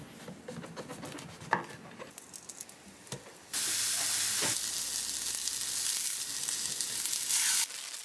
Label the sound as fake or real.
real